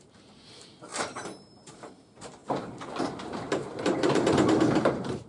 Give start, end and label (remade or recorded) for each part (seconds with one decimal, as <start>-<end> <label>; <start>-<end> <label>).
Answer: 0.0-5.3 remade